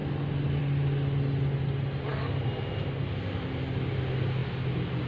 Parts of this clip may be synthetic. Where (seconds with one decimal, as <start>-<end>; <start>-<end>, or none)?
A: none